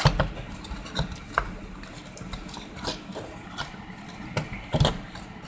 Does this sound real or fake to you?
real